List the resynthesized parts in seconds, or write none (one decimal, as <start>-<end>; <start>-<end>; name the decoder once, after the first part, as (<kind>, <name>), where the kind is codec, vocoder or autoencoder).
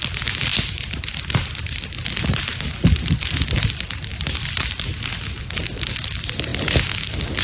none